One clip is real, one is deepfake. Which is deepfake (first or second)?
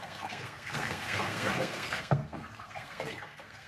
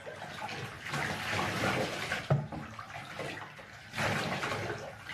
first